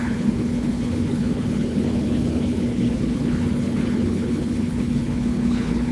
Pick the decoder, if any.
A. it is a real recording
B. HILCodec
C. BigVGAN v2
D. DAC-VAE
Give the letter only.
B